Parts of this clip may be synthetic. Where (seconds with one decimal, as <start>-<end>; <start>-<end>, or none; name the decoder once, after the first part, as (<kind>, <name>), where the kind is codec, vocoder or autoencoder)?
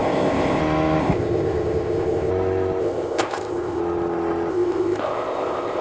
0.0-0.6 (codec, ZipCodec); 1.0-2.3; 2.8-3.8; 4.5-5.8